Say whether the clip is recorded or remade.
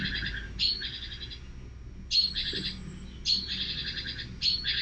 recorded